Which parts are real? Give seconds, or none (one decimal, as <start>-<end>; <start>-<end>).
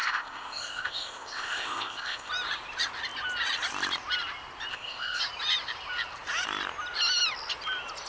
2.3-4.7; 5.2-8.1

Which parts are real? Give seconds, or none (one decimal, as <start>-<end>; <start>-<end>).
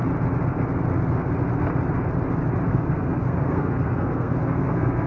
0.0-2.7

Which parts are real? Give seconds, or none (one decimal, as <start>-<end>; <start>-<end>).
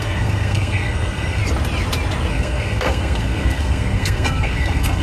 1.4-2.3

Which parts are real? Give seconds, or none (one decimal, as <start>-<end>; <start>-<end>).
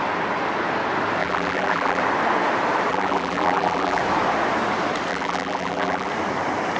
0.0-1.2; 2.0-2.9; 4.0-5.1; 6.1-6.8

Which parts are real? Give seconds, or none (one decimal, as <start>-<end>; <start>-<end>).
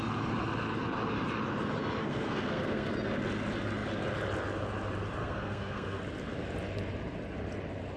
0.0-2.0; 2.9-5.2; 6.0-8.0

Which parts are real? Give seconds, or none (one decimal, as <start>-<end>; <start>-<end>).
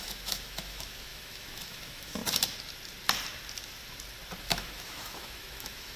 2.2-4.4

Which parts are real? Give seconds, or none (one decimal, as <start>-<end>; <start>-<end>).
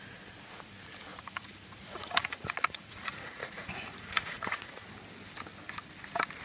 0.0-1.1; 4.9-6.4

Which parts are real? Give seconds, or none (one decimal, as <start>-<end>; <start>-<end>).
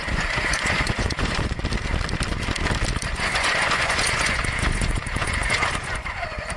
1.6-3.1